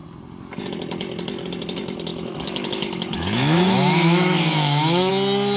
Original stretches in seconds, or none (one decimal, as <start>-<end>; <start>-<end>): 0.0-2.1; 5.1-5.6